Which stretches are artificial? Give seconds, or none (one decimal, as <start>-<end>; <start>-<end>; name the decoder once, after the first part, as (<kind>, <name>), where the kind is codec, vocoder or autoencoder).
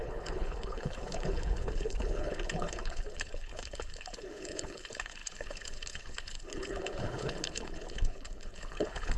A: 0.0-9.2 (codec, HILCodec)